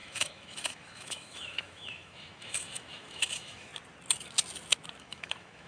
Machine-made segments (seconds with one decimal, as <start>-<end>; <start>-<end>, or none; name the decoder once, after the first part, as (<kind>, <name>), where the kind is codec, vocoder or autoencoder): 0.0-3.7 (autoencoder, DAC-VAE); 5.0-5.7